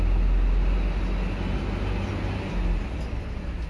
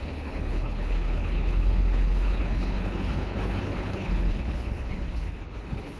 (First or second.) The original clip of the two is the first